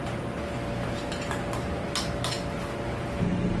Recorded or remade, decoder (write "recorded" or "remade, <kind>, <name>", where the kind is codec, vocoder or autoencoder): recorded